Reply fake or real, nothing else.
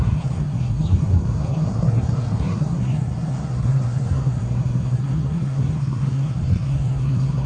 fake